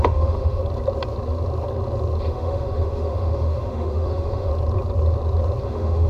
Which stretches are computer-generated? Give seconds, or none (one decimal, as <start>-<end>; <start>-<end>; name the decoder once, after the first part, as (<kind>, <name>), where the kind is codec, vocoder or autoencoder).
0.0-0.6 (autoencoder, DAC-VAE); 2.2-4.5; 5.6-6.1